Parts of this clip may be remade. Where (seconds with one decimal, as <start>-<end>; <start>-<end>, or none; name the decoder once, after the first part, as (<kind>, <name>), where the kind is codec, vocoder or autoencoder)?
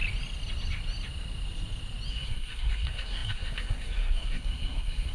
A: 2.1-5.1 (codec, SNAC)